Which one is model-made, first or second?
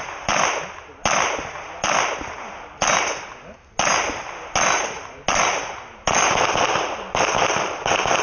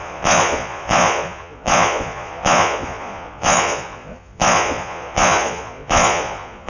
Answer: second